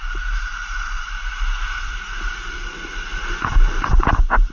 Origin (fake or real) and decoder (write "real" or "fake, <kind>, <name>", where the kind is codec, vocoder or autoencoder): real